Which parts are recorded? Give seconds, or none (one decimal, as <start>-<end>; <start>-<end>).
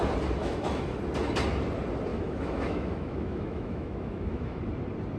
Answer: 0.0-0.4; 1.0-2.1; 4.6-5.2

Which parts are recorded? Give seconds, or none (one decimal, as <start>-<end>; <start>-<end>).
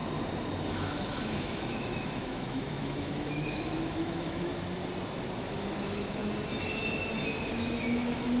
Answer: 0.0-0.7; 4.5-5.4; 6.2-7.5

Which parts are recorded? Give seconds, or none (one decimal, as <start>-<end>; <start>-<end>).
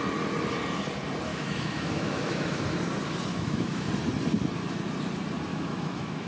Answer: 0.0-1.3; 2.6-3.3; 3.9-5.5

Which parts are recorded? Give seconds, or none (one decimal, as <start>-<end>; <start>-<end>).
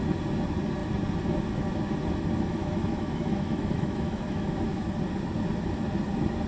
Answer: 0.0-2.6; 4.9-6.5